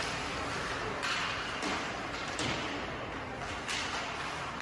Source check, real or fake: real